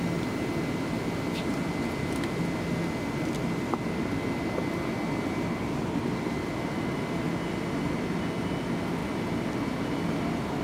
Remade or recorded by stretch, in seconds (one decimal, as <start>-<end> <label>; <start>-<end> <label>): 0.0-10.6 recorded